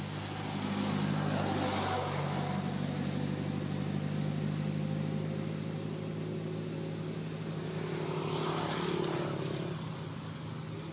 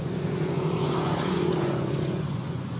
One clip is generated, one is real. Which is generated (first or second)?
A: second